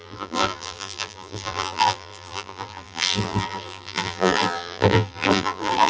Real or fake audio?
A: fake